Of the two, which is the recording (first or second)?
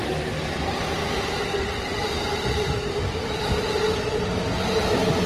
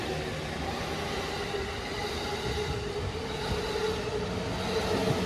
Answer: second